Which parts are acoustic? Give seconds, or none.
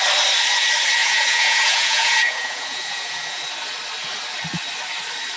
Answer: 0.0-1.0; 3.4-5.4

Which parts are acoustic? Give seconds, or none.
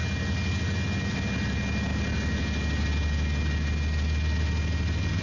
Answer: 0.0-5.2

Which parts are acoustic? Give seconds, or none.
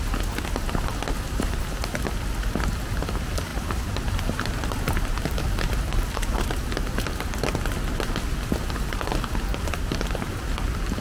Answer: 0.0-3.5; 6.5-9.5; 10.4-11.0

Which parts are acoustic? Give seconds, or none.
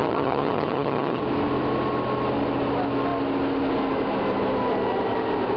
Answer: 1.2-5.6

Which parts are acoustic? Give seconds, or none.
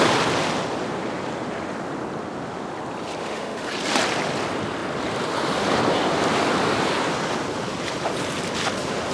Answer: 0.0-3.2; 3.7-9.1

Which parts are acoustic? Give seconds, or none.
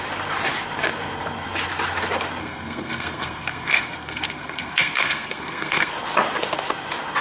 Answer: 0.0-2.4; 5.9-7.2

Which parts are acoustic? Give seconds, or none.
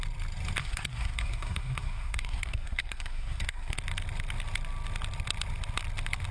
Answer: 0.0-0.6; 3.8-6.3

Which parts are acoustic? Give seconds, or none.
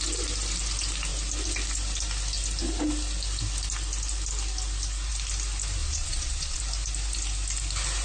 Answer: 0.0-5.8; 6.6-8.0